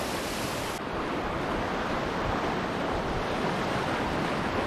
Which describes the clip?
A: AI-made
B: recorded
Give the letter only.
B